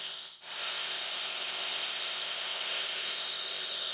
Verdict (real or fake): fake